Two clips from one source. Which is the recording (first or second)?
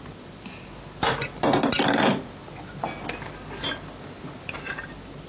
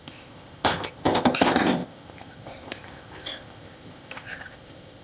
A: first